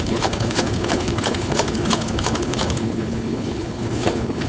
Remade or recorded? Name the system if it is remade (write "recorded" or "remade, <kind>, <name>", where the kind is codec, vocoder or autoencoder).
remade, codec, HILCodec